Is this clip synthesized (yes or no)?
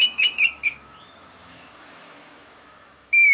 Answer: yes